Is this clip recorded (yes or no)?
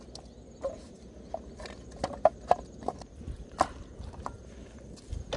yes